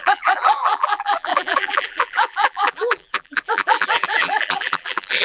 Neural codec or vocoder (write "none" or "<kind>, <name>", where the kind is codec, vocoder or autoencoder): vocoder, BigVGAN v2